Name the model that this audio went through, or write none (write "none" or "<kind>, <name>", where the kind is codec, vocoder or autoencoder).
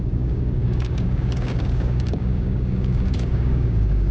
codec, DAC